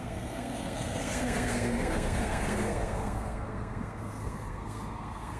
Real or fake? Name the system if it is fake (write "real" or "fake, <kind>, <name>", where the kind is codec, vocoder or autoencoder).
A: fake, codec, SNAC